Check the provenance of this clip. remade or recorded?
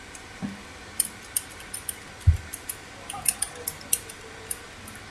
recorded